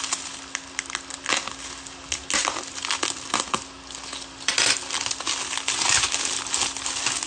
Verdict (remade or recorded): recorded